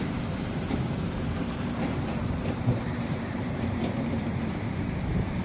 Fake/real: fake